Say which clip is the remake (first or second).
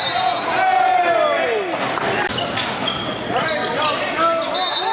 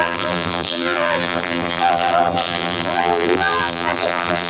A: second